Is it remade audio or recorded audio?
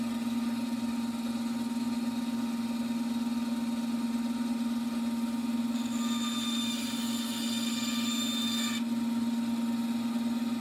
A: recorded